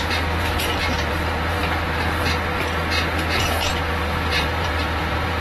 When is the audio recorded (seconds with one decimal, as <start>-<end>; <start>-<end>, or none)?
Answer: 1.6-3.9